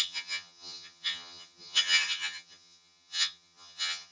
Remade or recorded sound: remade